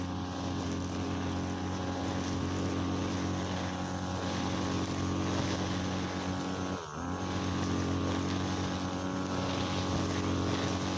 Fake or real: real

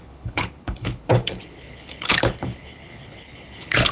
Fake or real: fake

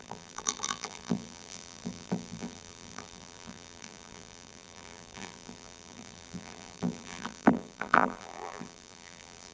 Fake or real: fake